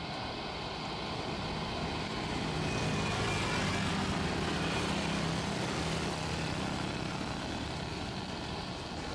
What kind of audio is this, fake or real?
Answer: real